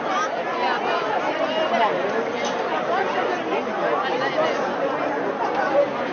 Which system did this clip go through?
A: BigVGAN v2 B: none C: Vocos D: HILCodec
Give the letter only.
B